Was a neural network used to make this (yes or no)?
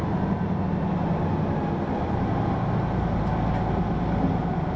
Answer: no